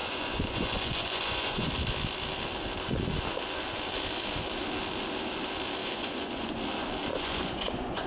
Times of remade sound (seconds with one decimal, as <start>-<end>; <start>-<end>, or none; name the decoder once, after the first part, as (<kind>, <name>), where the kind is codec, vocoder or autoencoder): 0.0-1.7 (vocoder, Vocos); 5.8-6.5; 7.1-8.1